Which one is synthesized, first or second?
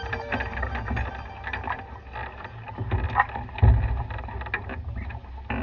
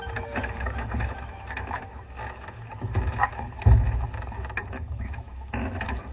second